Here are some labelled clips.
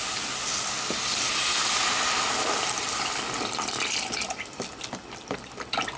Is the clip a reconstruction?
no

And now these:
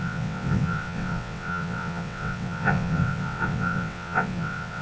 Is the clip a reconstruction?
yes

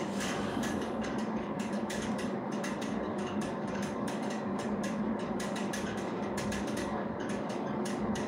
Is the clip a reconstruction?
yes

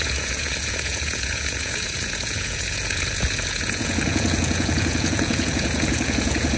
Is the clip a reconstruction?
yes